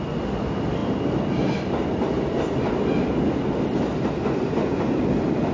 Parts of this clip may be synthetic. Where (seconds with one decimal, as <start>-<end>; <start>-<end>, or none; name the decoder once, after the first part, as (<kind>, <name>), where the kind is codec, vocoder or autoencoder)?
none